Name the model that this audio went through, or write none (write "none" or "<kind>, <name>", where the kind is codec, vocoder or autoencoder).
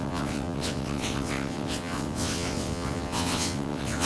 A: vocoder, WaveNeXt